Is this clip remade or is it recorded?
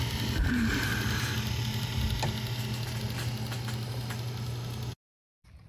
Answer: recorded